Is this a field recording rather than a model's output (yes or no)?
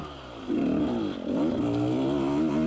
yes